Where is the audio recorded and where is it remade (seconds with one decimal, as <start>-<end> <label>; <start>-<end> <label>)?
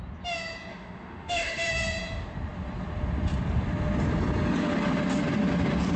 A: 0.0-0.7 recorded; 0.7-1.7 remade; 1.7-6.0 recorded